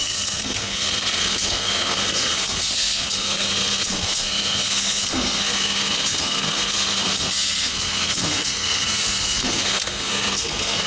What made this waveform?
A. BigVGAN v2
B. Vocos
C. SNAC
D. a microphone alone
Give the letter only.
C